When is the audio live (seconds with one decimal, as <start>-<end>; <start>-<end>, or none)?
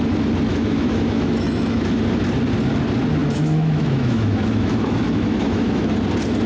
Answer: 0.0-0.5; 1.8-3.2; 5.9-6.5